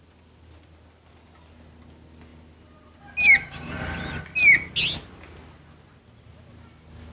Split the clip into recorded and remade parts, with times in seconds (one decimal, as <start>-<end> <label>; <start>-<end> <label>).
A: 0.0-7.1 recorded